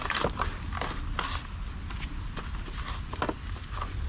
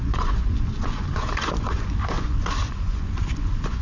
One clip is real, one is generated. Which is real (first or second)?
first